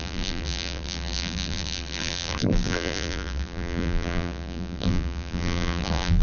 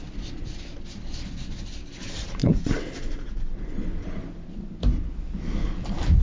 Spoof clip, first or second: first